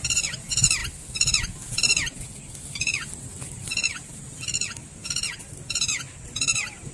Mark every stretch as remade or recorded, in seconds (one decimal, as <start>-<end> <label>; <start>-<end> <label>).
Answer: 0.0-6.9 recorded